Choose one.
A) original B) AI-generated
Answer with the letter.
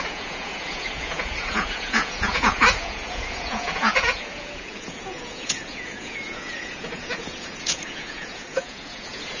B